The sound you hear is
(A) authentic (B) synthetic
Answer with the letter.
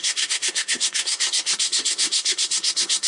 B